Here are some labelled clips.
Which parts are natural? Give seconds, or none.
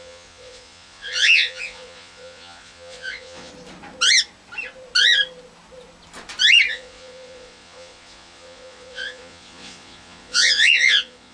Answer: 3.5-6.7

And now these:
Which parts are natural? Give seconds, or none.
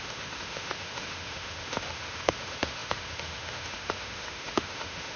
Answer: none